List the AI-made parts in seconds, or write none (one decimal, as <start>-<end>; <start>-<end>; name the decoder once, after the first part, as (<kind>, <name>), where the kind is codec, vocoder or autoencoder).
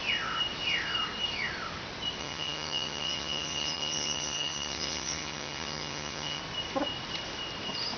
2.2-6.4 (vocoder, HiFi-GAN)